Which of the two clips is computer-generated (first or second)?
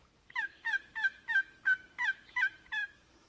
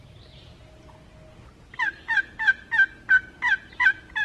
first